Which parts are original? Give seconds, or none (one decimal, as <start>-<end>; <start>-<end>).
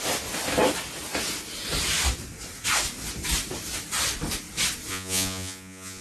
0.0-4.9